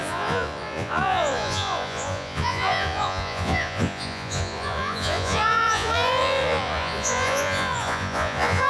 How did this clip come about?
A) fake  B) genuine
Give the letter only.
A